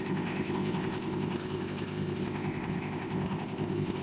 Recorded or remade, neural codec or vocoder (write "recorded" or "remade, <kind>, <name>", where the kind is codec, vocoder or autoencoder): remade, codec, ZipCodec